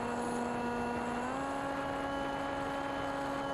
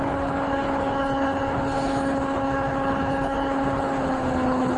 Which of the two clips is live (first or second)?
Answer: first